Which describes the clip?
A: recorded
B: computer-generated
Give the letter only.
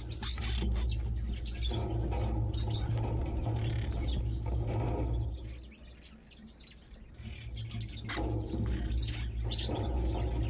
A